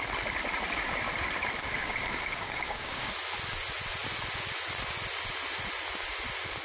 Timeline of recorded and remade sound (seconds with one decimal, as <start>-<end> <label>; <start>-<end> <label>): 0.0-1.8 recorded; 1.8-3.1 remade; 3.1-6.6 recorded